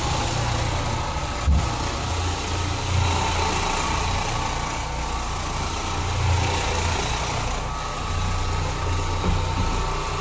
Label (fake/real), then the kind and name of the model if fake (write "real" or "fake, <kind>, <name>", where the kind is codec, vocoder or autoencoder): real